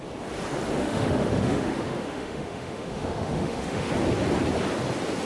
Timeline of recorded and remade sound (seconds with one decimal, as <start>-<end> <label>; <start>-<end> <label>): 0.0-0.8 recorded; 0.8-3.9 remade; 3.9-5.2 recorded